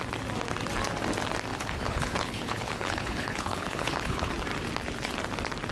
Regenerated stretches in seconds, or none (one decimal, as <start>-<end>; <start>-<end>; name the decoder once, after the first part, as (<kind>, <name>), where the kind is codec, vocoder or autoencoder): 1.5-4.3 (codec, HILCodec)